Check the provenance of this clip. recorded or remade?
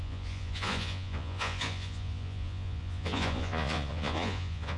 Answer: remade